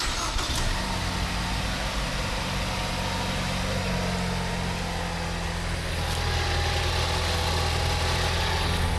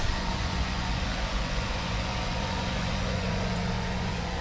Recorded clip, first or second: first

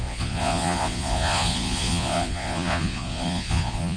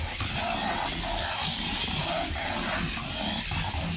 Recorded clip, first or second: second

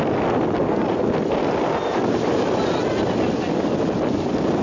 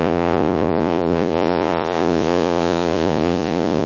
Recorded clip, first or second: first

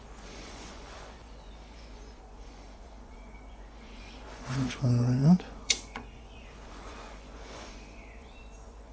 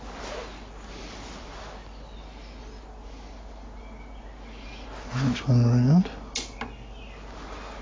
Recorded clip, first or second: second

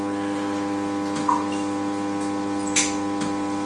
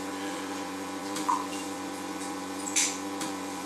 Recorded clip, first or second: first